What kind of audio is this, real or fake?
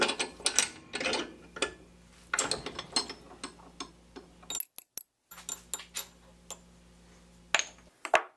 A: real